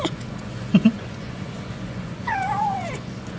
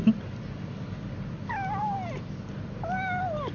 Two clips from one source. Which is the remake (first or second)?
first